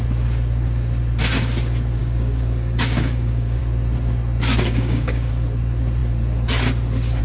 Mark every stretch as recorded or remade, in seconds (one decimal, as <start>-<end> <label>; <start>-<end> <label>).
0.0-2.0 recorded; 2.0-3.6 remade; 3.6-4.5 recorded; 4.5-5.3 remade; 5.3-7.2 recorded